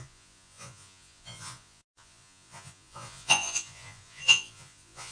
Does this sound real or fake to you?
fake